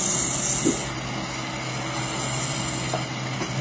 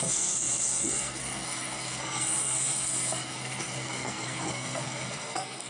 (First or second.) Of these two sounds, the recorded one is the first